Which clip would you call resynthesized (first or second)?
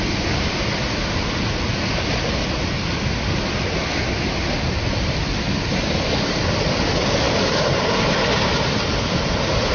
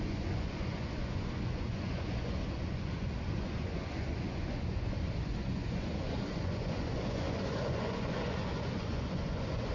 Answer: second